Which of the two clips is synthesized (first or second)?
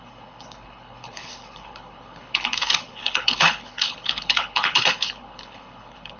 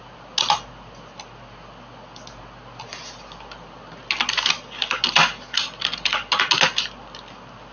first